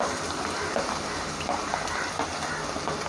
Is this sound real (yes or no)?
yes